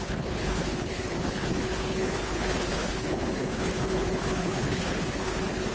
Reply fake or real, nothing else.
fake